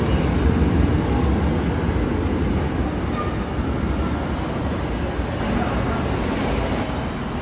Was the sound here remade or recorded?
recorded